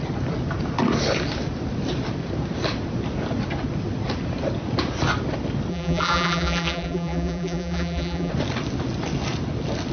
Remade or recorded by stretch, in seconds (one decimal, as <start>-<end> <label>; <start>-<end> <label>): 0.0-5.7 recorded; 5.7-8.3 remade; 8.3-9.9 recorded